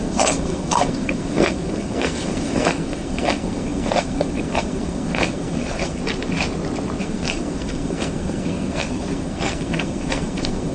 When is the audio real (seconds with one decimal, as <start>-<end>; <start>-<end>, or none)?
6.0-7.0